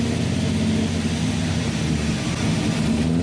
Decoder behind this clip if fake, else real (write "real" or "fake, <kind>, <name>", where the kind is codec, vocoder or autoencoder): real